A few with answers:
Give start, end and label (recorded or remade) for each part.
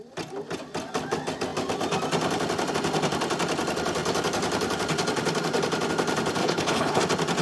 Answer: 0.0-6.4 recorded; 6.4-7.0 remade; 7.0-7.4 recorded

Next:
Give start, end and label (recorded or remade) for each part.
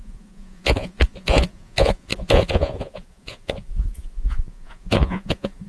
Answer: 0.0-5.7 remade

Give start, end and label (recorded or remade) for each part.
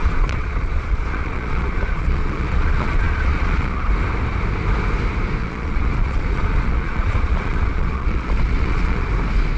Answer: 0.0-3.9 remade; 3.9-5.4 recorded; 5.4-9.1 remade; 9.1-9.6 recorded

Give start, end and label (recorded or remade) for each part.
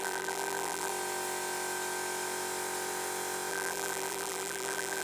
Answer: 0.0-0.9 remade; 0.9-3.5 recorded; 3.5-5.0 remade